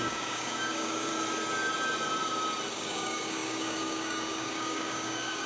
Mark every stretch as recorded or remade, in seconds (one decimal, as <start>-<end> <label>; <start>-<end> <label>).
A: 0.0-1.1 remade; 1.1-2.7 recorded; 2.7-5.5 remade